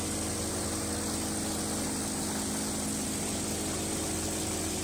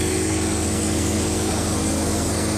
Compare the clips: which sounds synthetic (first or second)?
second